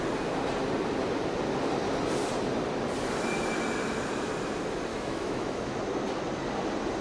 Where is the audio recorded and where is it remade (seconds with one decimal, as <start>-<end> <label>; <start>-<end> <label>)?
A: 0.0-4.9 recorded; 4.9-5.8 remade; 5.8-7.0 recorded